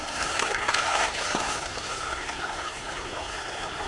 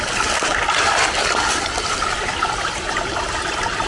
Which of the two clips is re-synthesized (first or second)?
first